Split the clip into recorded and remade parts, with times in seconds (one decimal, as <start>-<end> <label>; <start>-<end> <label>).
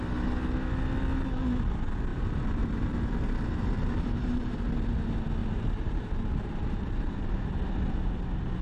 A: 0.0-2.1 recorded; 2.1-4.9 remade; 4.9-5.4 recorded; 5.4-7.1 remade; 7.1-8.6 recorded